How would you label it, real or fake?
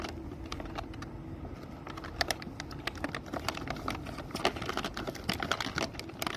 real